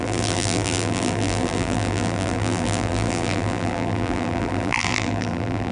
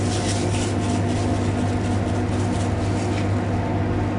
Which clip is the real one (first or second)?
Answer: second